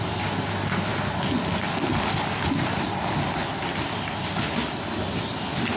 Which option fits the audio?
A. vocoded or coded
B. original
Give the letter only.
B